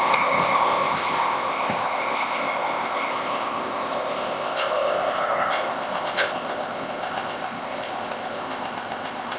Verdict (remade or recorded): remade